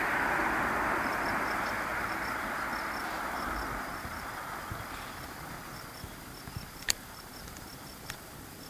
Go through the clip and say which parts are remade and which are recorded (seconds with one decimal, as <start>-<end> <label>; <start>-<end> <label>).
0.0-1.9 remade; 1.9-6.7 recorded; 6.7-8.7 remade